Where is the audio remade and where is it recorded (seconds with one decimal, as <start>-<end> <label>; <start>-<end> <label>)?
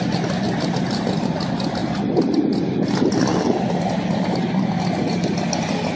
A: 0.0-6.0 recorded